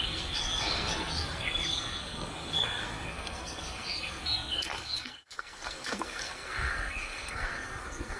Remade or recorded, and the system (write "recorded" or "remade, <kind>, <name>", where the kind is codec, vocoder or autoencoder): remade, codec, SNAC